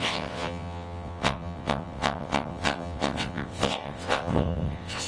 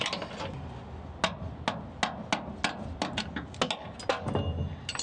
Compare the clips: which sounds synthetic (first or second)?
first